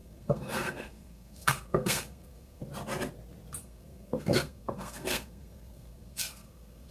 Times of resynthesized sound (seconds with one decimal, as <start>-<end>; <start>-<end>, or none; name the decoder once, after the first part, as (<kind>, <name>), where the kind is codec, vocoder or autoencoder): 0.0-2.6 (codec, SNAC); 3.6-6.9